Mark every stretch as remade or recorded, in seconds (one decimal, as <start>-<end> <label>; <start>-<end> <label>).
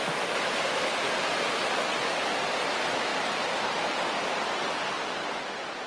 0.0-5.9 recorded